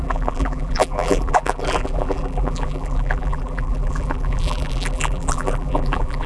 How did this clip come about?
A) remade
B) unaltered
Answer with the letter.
A